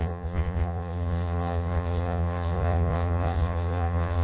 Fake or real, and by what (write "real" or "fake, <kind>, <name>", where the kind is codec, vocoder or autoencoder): fake, vocoder, Vocos